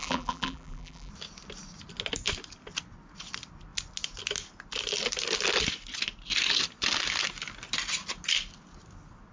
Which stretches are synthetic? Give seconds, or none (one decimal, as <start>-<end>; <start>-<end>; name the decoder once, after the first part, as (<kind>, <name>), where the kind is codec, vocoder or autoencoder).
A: 0.0-1.1 (vocoder, BigVGAN v2)